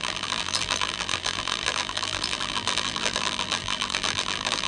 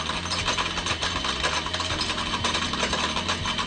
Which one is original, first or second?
second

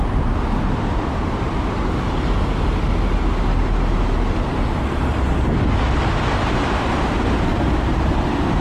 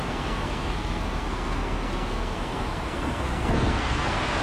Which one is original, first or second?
first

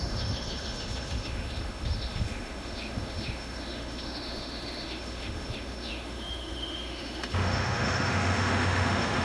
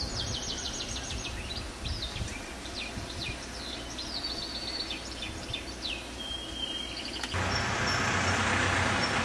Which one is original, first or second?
second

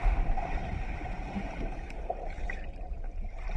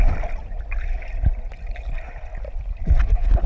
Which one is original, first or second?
second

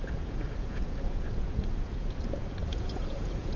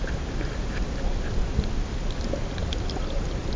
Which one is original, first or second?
second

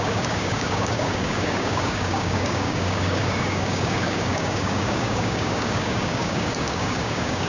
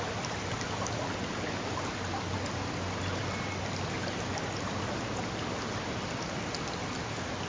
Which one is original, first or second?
second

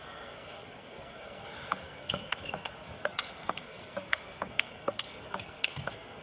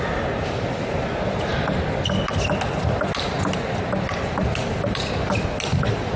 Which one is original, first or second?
second